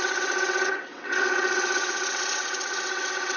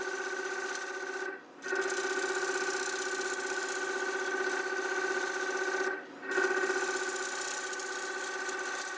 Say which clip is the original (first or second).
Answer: second